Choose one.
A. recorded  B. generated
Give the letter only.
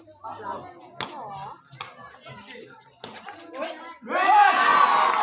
A